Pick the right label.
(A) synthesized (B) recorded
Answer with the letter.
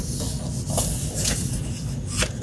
B